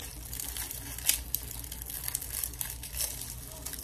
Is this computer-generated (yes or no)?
no